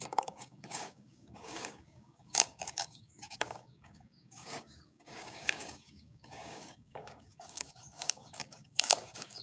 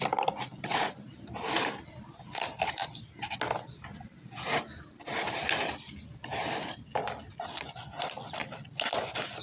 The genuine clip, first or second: second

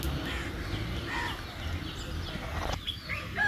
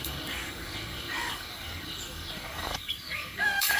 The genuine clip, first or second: first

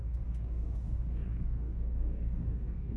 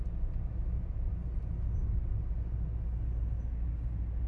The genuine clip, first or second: second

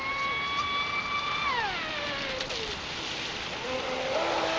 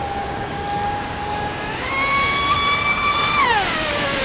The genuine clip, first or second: first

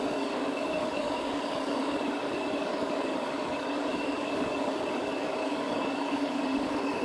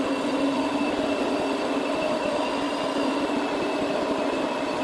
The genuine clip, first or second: second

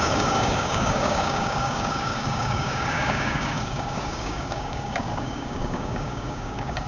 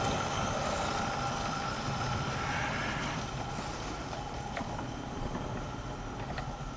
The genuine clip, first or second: second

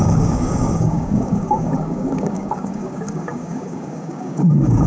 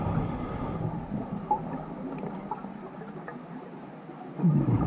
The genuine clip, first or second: second